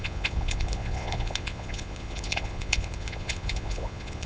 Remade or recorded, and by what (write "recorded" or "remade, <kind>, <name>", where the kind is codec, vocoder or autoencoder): remade, vocoder, Vocos